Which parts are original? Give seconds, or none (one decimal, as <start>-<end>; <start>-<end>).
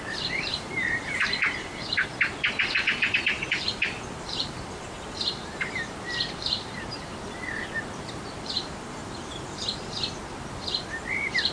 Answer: 2.1-2.6; 7.1-8.2; 9.0-11.5